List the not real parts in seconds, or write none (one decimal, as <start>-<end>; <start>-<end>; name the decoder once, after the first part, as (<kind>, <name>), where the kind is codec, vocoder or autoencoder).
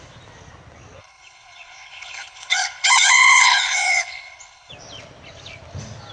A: 1.0-4.7 (codec, HILCodec)